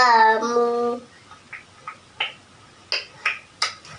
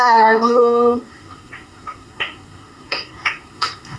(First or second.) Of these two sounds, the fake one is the second